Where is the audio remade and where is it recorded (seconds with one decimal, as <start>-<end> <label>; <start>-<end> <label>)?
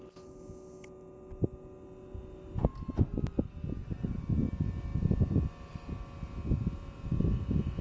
0.0-7.8 recorded